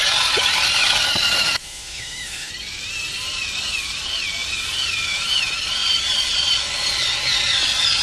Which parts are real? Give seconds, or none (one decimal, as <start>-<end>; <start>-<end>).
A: 0.0-1.6; 2.5-8.0